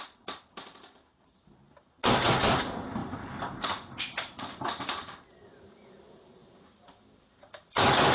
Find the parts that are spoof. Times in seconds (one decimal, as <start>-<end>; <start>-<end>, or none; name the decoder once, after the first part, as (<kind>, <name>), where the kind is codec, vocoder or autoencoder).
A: 3.0-7.5 (vocoder, BigVGAN v2)